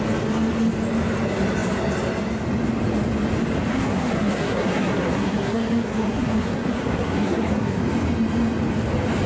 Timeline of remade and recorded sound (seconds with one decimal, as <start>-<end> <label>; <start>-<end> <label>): 0.0-3.7 recorded; 3.7-7.8 remade; 7.8-9.3 recorded